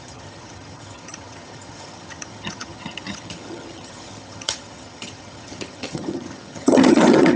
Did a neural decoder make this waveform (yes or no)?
yes